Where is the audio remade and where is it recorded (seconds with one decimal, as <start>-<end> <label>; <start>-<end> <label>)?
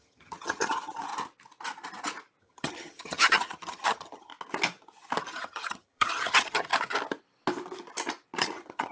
0.0-1.1 remade; 1.1-2.4 recorded; 2.4-4.3 remade; 4.3-5.2 recorded; 5.2-6.7 remade; 6.7-8.4 recorded; 8.4-8.9 remade